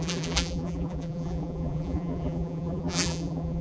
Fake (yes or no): yes